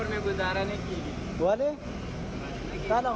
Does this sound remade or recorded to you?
recorded